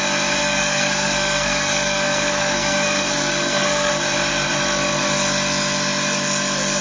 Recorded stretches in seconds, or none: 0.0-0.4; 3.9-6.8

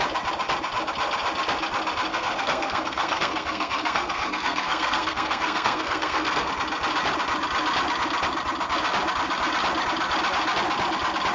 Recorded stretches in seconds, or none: 0.0-2.1; 6.5-11.3

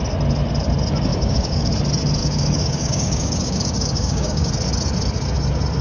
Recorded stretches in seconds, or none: 0.0-1.1; 1.7-2.2; 4.5-5.8

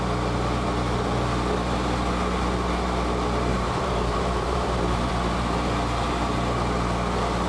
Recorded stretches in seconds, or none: 0.0-3.5; 5.1-7.5

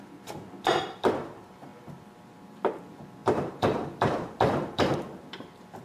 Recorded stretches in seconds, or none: none